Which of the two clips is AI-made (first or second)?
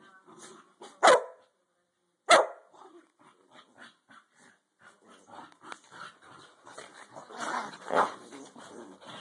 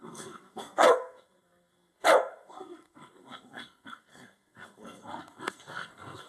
second